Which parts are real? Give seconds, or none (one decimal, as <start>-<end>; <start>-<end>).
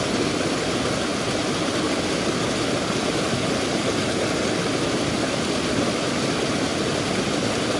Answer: 0.0-7.8